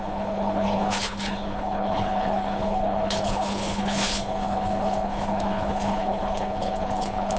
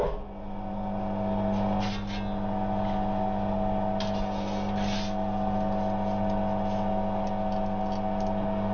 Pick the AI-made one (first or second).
first